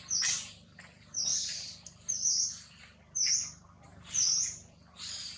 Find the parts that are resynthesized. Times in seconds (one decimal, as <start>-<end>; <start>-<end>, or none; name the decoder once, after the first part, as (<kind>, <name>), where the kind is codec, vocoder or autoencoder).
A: 0.0-5.4 (vocoder, BigVGAN v2)